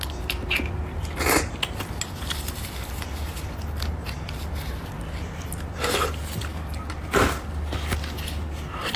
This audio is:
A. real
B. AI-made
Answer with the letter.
A